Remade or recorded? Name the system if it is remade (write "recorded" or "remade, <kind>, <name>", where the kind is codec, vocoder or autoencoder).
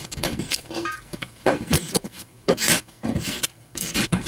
remade, codec, SNAC